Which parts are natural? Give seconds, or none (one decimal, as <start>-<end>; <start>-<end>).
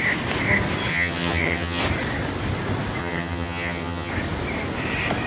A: 0.0-0.9; 1.8-3.0; 4.1-5.3